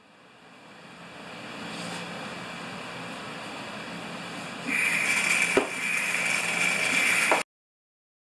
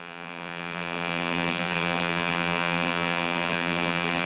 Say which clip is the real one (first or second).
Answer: first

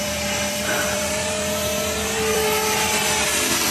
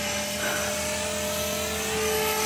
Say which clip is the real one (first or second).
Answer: second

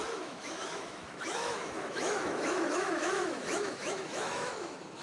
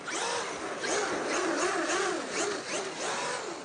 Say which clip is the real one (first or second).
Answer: second